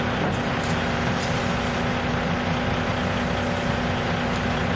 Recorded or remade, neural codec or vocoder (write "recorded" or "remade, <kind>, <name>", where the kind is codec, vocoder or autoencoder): recorded